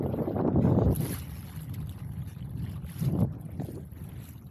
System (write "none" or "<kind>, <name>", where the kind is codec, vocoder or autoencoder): none